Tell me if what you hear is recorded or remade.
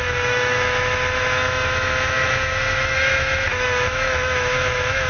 remade